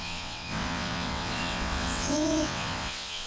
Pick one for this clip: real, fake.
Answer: fake